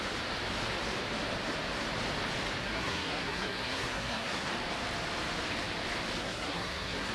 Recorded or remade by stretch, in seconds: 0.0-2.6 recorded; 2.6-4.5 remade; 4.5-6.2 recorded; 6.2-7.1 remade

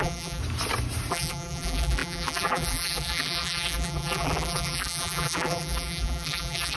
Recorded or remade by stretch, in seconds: 0.0-0.4 remade; 0.4-1.1 recorded; 1.1-6.8 remade

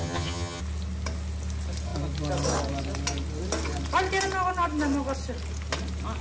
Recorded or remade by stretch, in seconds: 0.0-0.6 remade; 0.6-6.2 recorded

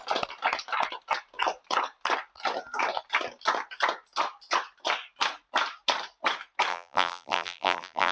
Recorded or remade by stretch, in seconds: 0.0-6.7 recorded; 6.7-8.1 remade

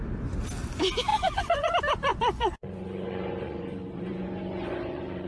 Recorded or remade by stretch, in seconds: 0.0-1.1 recorded; 1.1-1.7 remade; 1.7-2.1 recorded; 2.1-5.3 remade

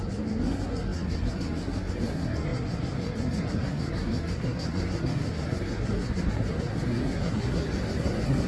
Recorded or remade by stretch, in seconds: 0.0-8.5 remade